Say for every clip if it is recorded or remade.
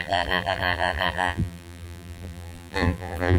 remade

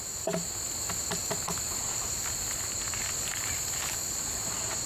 recorded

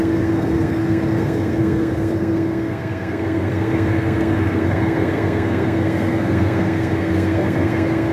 remade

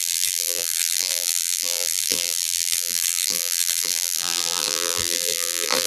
remade